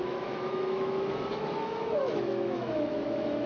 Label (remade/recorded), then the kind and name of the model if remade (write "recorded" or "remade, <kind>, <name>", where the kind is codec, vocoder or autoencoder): remade, autoencoder, DAC-VAE